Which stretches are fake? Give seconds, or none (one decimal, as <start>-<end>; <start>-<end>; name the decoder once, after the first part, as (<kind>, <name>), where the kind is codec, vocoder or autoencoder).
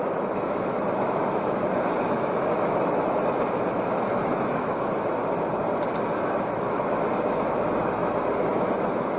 0.0-5.2 (autoencoder, DAC-VAE); 6.0-9.2